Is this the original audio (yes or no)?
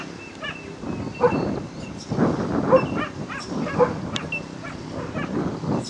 yes